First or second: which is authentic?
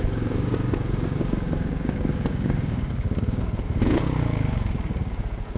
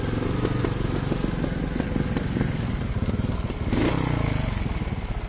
second